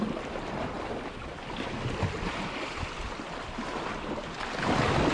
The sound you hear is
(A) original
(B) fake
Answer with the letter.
B